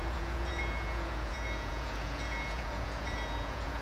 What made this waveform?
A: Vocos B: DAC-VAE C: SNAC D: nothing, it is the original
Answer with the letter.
A